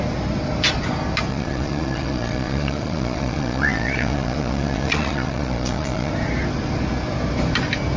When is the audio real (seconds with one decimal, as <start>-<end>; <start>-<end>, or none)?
0.0-1.3; 6.1-8.0

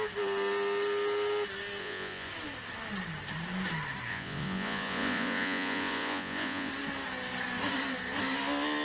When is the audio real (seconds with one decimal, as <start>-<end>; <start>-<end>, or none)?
0.0-1.8; 2.3-4.1; 6.7-8.8

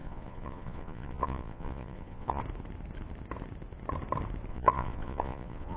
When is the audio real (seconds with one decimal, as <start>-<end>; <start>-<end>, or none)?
2.4-4.5

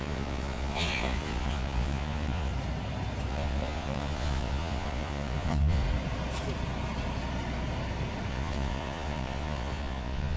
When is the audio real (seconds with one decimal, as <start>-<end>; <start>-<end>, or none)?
2.5-3.3; 5.8-8.3

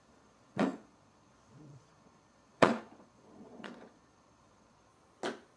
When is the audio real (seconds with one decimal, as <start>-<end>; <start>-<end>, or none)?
4.9-5.6

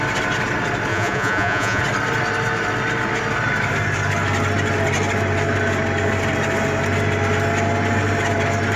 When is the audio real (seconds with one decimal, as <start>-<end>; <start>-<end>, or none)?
0.0-0.9; 1.8-8.8